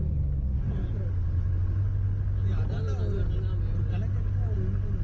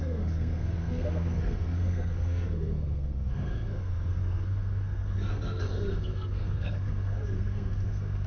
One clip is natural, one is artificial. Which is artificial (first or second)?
second